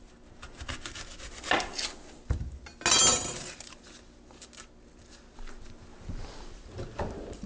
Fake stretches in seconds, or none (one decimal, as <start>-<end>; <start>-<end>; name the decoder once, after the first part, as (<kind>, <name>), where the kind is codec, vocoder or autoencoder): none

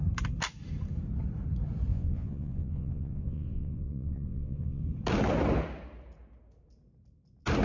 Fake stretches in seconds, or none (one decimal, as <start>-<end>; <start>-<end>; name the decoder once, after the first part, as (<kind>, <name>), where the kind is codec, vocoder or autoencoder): 1.9-4.8 (vocoder, Vocos)

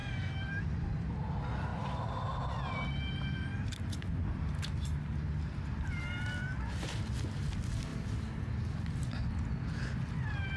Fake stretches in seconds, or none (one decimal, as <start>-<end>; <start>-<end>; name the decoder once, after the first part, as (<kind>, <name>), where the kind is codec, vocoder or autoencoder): none

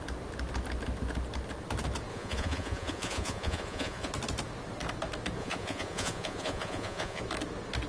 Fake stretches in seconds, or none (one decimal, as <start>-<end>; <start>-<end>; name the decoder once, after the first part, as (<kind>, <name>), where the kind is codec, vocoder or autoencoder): 2.1-4.1 (vocoder, Vocos); 5.4-7.2

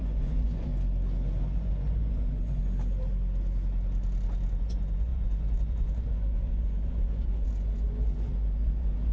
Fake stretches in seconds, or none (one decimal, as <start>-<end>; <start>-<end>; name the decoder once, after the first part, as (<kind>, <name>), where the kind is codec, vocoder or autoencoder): 0.0-0.7 (vocoder, Vocos); 1.4-2.6; 4.6-9.1

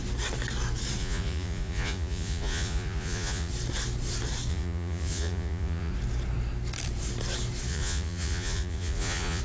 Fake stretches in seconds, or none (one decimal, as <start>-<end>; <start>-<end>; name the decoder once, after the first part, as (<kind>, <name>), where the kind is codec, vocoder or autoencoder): 1.0-3.5 (vocoder, Vocos); 4.5-5.9; 7.7-9.4